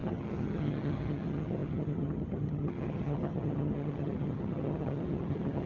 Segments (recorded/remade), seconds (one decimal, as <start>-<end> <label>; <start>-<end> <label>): 0.0-5.7 remade